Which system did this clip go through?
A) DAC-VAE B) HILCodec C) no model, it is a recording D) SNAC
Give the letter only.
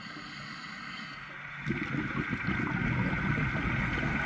C